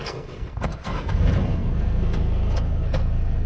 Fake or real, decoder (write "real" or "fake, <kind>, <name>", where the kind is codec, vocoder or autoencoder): fake, codec, SNAC